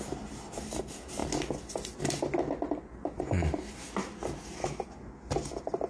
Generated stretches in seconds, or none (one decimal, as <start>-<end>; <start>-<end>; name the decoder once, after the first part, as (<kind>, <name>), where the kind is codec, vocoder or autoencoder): none